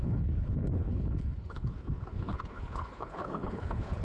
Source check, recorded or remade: remade